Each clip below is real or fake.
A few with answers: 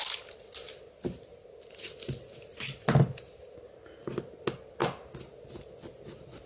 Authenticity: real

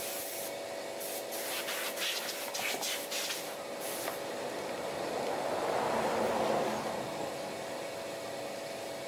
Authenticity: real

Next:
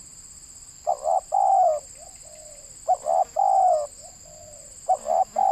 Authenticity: real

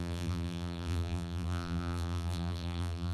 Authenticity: fake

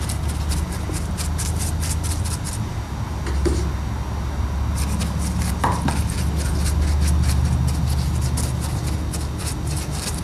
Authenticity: real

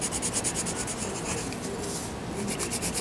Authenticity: real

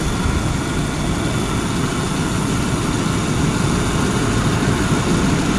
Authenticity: real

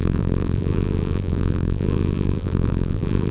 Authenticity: fake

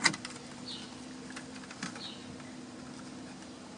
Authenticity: real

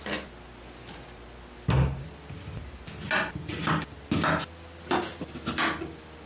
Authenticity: real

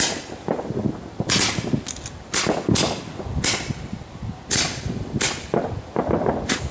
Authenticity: real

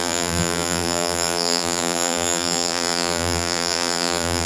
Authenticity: fake